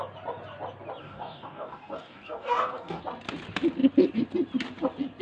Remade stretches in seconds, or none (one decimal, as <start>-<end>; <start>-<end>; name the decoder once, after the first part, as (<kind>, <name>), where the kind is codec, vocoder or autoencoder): 1.0-3.0 (codec, DAC)